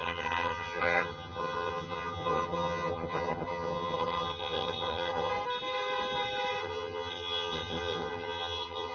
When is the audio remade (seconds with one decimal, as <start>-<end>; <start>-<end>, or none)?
0.0-5.3; 6.6-8.9